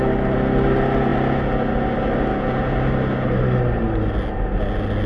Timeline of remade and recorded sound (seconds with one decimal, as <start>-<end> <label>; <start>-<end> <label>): 0.0-5.1 recorded